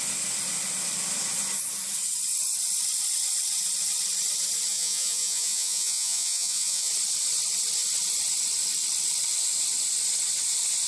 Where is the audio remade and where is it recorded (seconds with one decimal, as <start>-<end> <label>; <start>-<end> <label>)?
0.0-4.7 recorded; 4.7-6.9 remade; 6.9-10.9 recorded